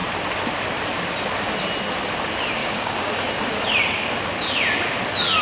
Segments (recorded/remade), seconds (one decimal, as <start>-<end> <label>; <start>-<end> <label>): 0.0-2.6 recorded; 2.6-3.3 remade; 3.3-5.4 recorded